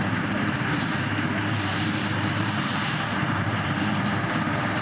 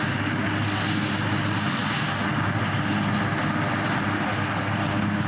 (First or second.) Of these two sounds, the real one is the second